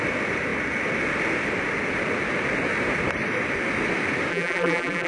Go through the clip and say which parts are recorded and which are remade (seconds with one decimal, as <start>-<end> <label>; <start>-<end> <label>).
0.0-4.3 recorded; 4.3-5.1 remade